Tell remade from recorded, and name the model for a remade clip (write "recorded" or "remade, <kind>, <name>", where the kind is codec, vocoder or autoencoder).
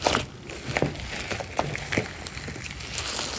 recorded